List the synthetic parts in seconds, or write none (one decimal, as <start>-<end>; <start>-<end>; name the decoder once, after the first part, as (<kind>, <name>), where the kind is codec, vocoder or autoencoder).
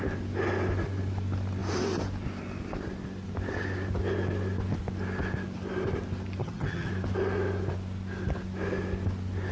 6.4-6.9 (vocoder, HiFi-GAN)